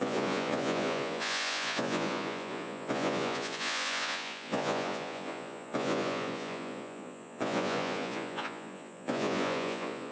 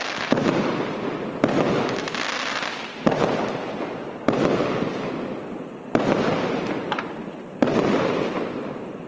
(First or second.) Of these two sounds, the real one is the second